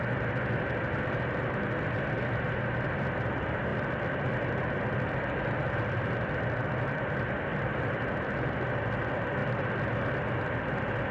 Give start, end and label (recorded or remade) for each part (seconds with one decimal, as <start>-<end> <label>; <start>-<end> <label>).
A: 0.0-3.7 recorded; 3.7-7.0 remade; 7.0-7.5 recorded; 7.5-8.4 remade; 8.4-9.4 recorded; 9.4-9.9 remade; 9.9-11.1 recorded